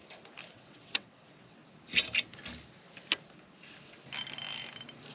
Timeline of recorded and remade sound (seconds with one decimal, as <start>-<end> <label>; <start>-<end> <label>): 0.0-0.5 recorded; 0.5-1.6 remade; 1.6-5.1 recorded